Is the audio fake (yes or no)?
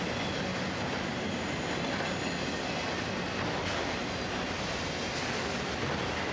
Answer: no